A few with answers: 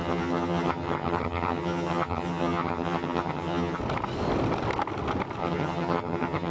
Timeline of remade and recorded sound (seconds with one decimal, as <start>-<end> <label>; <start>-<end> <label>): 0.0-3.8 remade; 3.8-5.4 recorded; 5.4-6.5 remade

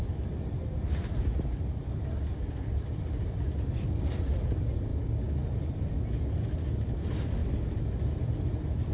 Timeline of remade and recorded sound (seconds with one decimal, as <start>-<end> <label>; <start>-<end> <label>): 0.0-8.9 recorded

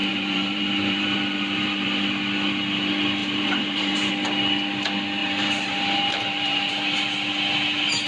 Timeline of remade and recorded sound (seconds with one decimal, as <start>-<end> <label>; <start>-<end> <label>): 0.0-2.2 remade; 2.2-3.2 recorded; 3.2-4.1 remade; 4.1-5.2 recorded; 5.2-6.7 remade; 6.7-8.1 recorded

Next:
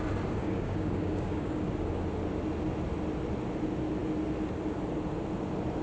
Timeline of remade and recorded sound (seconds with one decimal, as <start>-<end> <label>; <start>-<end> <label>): 0.0-0.4 recorded; 0.4-1.7 remade; 1.7-5.8 recorded

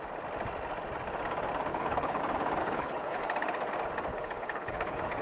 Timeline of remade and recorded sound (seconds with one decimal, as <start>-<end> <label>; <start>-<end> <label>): 0.0-1.7 recorded; 1.7-2.2 remade; 2.2-2.6 recorded; 2.6-3.2 remade; 3.2-4.1 recorded; 4.1-5.2 remade

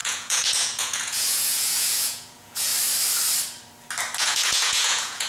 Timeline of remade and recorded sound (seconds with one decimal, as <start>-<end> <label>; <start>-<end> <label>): 0.0-2.7 remade; 2.7-4.2 recorded; 4.2-5.3 remade